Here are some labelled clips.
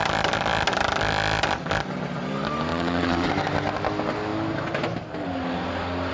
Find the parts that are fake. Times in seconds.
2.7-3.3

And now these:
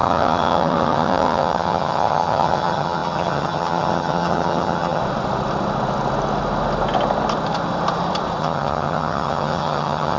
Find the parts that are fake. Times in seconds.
0.0-5.0; 8.4-10.2

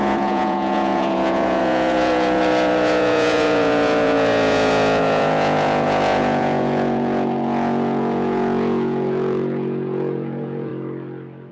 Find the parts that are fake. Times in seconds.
0.0-10.7

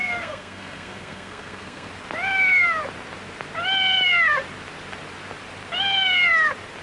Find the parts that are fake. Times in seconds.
0.0-1.9

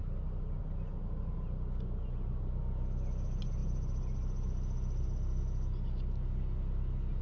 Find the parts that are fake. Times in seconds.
none